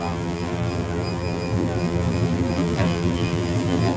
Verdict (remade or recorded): remade